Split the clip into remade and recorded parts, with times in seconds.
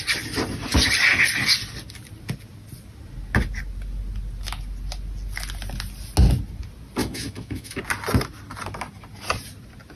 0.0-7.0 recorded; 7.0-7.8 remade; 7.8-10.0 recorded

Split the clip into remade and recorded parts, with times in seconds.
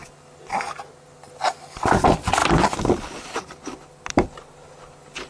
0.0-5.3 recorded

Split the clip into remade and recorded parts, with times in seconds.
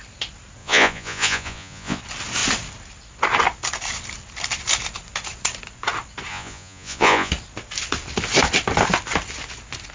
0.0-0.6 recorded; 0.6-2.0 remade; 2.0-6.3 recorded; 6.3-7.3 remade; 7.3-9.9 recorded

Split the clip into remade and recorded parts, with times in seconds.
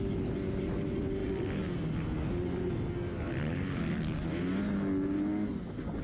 0.0-6.0 recorded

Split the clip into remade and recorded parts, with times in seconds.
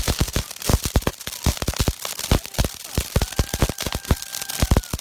0.0-0.7 remade; 0.7-3.7 recorded; 3.7-4.3 remade; 4.3-5.0 recorded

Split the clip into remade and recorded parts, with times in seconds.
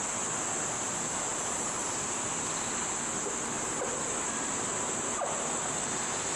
0.0-6.4 recorded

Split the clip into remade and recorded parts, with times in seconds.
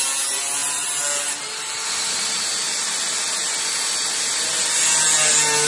0.0-5.7 recorded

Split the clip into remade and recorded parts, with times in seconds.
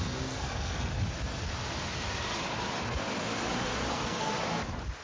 0.0-0.9 remade; 0.9-3.9 recorded; 3.9-4.3 remade; 4.3-5.0 recorded